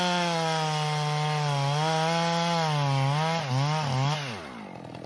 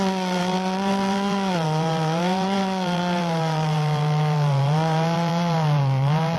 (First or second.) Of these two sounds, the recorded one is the first